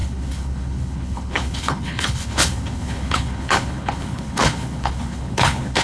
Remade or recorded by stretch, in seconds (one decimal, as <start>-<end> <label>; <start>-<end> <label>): 0.0-5.8 remade